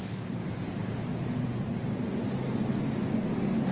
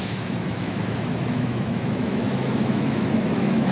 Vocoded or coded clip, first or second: second